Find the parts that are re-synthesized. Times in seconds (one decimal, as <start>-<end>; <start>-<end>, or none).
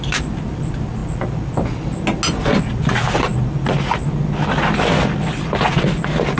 none